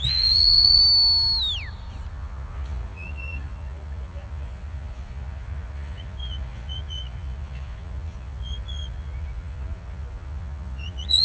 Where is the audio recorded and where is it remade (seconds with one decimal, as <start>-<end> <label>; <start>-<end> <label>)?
0.0-0.8 remade; 0.8-2.1 recorded; 2.1-11.2 remade